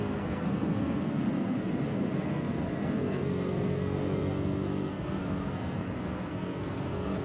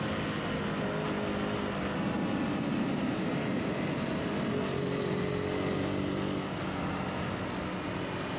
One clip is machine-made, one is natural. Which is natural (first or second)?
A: second